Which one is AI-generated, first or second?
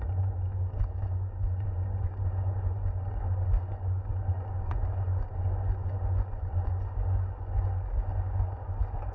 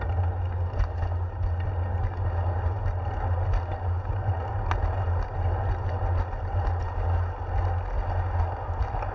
first